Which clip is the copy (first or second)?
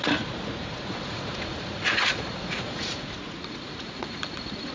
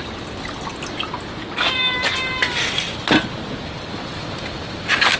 first